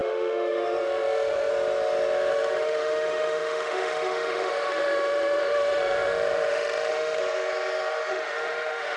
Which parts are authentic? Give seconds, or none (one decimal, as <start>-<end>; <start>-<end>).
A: 1.5-2.3; 7.2-8.1